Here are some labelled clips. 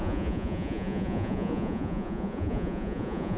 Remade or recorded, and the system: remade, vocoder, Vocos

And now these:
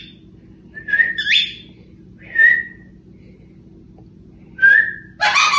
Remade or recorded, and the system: recorded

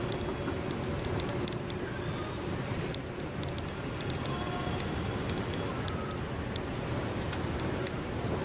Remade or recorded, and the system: recorded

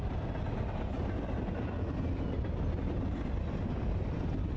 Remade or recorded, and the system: recorded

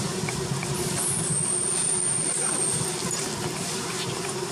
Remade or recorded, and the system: recorded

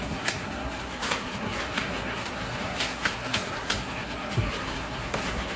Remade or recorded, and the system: remade, codec, SNAC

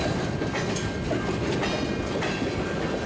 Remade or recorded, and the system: recorded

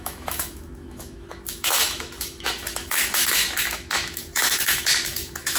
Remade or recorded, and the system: remade, autoencoder, DAC-VAE